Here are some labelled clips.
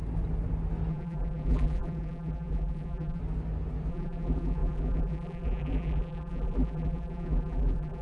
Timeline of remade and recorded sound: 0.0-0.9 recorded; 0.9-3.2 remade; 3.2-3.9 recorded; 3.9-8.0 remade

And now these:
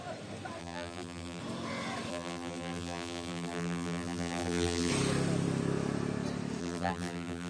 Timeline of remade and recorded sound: 0.0-0.6 recorded; 0.6-1.4 remade; 1.4-2.1 recorded; 2.1-4.9 remade; 4.9-6.6 recorded; 6.6-7.5 remade

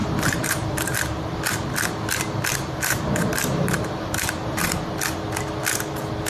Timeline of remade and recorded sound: 0.0-1.0 remade; 1.0-2.5 recorded; 2.5-4.9 remade; 4.9-6.3 recorded

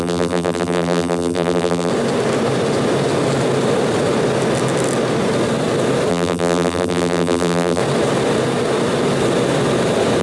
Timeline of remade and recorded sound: 0.0-1.9 remade; 1.9-6.1 recorded; 6.1-7.8 remade; 7.8-10.2 recorded

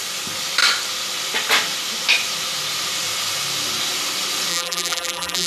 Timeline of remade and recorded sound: 0.0-4.5 recorded; 4.5-5.5 remade

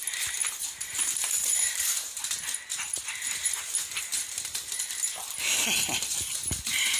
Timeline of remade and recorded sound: 0.0-0.4 recorded; 0.4-3.1 remade; 3.1-7.0 recorded